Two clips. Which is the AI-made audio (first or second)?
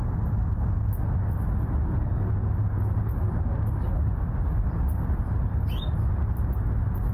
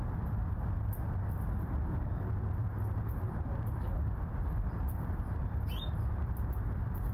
second